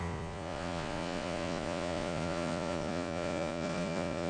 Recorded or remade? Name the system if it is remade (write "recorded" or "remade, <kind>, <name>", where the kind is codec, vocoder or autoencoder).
remade, vocoder, Vocos